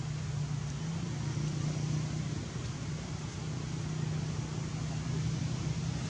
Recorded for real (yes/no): yes